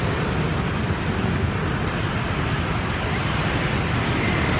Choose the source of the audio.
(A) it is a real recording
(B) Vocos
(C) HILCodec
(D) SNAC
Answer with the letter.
A